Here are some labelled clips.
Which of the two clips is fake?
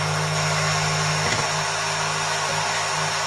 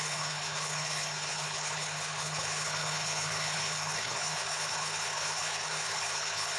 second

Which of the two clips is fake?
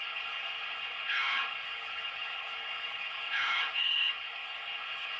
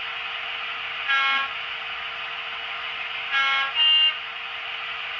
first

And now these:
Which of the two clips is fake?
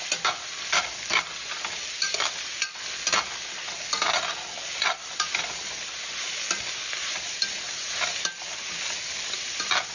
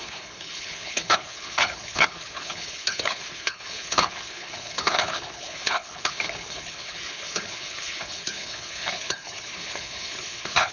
second